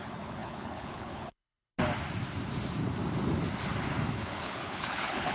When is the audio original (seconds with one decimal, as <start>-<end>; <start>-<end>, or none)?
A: 1.7-4.1

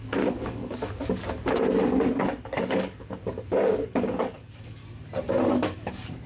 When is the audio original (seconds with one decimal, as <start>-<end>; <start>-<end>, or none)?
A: 1.2-2.2; 4.8-5.5

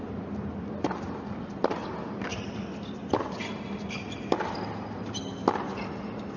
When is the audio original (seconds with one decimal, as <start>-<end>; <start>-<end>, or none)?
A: 0.0-6.4

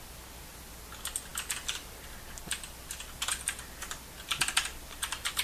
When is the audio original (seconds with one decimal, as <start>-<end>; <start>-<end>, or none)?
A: 0.0-5.4